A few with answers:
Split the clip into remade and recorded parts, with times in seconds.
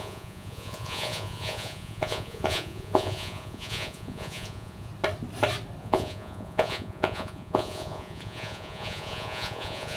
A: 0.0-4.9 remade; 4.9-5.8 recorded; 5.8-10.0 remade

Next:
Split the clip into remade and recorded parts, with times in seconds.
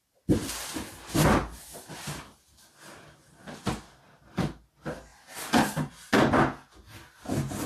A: 0.0-7.7 recorded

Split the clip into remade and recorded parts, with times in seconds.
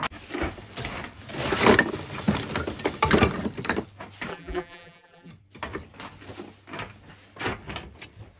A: 0.0-4.3 recorded; 4.3-5.3 remade; 5.3-8.4 recorded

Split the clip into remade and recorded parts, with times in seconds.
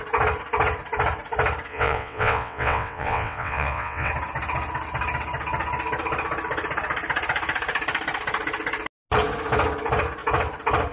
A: 0.0-1.7 recorded; 1.7-4.1 remade; 4.1-10.9 recorded